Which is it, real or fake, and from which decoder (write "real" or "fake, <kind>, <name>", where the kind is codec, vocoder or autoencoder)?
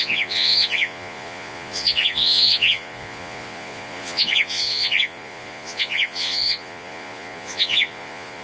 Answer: fake, vocoder, Vocos